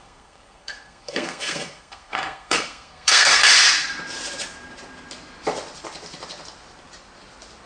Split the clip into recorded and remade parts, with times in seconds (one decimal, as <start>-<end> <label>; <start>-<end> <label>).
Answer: 0.0-3.4 remade; 3.4-7.7 recorded